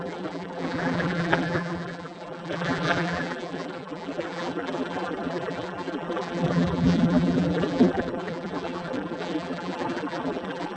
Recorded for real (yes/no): no